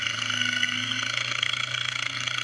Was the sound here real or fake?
fake